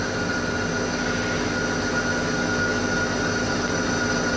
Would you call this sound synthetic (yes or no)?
no